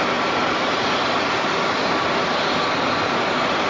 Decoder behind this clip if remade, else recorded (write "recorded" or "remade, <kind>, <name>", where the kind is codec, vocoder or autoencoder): recorded